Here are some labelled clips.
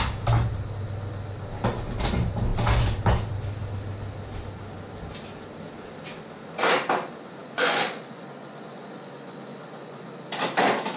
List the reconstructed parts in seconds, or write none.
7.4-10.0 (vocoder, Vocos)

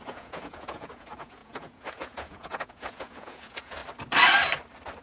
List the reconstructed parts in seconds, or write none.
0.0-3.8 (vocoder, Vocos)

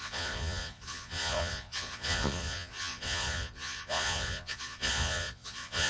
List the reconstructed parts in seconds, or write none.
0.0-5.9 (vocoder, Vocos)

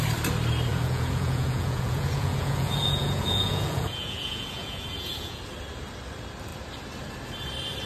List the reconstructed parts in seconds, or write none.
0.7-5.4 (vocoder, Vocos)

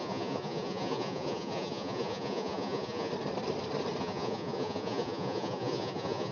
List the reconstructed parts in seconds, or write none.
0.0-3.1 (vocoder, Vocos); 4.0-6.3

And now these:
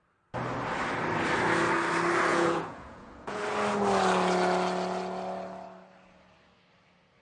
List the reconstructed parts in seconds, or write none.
2.3-3.4 (vocoder, Vocos)